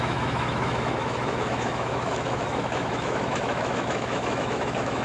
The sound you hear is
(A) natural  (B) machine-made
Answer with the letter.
B